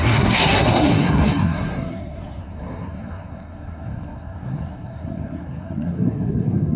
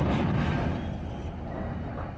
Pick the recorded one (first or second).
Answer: second